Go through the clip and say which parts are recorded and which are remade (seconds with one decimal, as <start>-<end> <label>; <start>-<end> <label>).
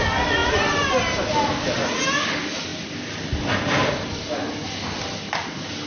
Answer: 0.0-5.9 recorded